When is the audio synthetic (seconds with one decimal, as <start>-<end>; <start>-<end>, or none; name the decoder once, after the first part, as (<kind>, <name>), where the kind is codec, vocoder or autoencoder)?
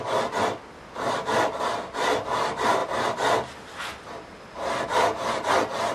4.9-5.5 (vocoder, BigVGAN v2)